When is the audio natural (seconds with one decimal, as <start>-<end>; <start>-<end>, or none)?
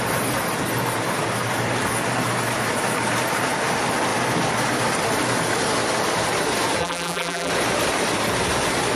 0.0-6.8; 7.5-9.0